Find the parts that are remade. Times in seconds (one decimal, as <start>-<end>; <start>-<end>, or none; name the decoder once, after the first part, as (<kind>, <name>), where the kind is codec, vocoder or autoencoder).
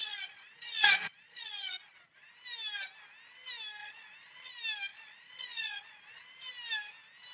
0.0-2.3 (vocoder, Vocos); 3.8-4.5; 4.9-6.2